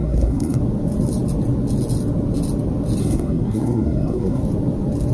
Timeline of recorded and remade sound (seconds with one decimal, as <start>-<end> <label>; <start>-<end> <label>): 0.0-0.6 remade; 0.6-3.0 recorded; 3.0-4.4 remade; 4.4-5.1 recorded